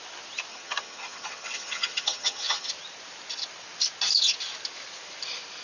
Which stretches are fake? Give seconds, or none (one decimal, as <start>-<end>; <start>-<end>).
0.5-2.7